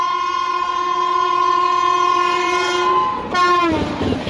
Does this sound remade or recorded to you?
remade